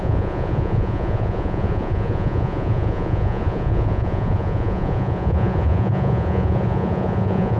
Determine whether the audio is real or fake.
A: fake